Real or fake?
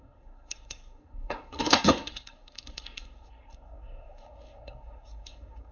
fake